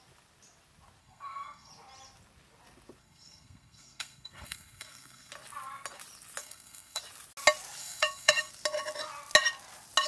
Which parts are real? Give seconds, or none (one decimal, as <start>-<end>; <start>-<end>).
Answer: 0.0-1.0; 1.7-3.0; 5.3-6.4; 7.0-7.8; 8.5-10.1